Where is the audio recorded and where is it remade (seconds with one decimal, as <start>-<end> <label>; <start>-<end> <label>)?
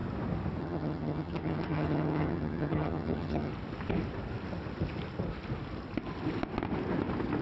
0.0-0.6 recorded; 0.6-3.5 remade; 3.5-7.4 recorded